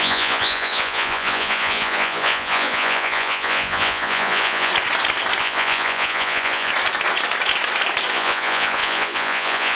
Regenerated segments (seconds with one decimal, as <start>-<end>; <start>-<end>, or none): 0.0-4.7; 5.4-6.7; 8.1-9.8